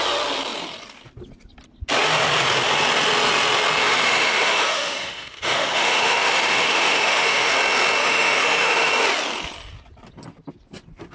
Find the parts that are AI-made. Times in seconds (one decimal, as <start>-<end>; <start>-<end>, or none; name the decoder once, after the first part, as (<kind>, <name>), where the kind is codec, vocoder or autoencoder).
3.8-7.5 (autoencoder, DAC-VAE); 8.0-8.9